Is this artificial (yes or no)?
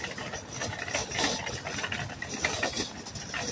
no